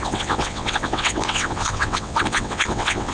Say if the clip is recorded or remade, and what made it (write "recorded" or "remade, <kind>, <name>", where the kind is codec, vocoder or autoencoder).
remade, vocoder, WaveNeXt